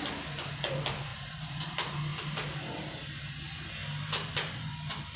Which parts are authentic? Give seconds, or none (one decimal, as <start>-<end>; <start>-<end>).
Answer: 0.0-1.1; 1.7-5.2